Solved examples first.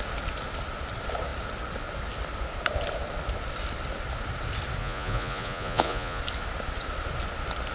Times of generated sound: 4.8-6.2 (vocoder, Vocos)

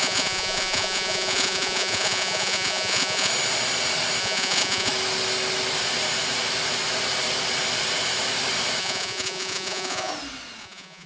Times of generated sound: 0.0-3.3 (vocoder, Vocos); 4.2-4.9; 8.8-10.1; 10.6-11.1

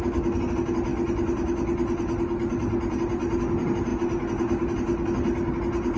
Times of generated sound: none

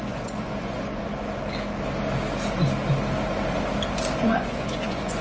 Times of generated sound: 0.0-1.1 (vocoder, Vocos); 4.2-5.2

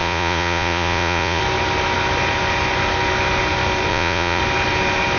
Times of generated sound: 0.0-1.4 (vocoder, Vocos); 3.9-4.4

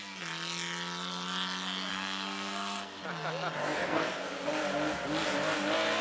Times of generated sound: 1.9-3.0 (codec, SNAC); 3.6-4.3

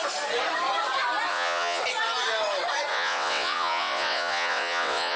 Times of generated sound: 1.3-1.8 (vocoder, WaveNeXt); 2.9-5.2